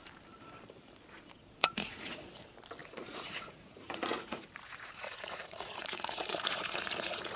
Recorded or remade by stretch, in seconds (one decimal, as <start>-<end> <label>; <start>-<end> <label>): 0.0-1.6 recorded; 1.6-2.3 remade; 2.3-2.8 recorded; 2.8-7.4 remade